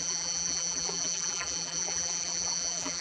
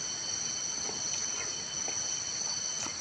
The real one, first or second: second